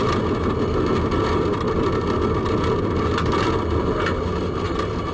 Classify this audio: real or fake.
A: real